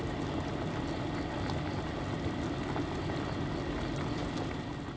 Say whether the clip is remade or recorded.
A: recorded